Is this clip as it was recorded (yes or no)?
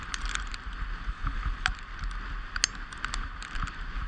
yes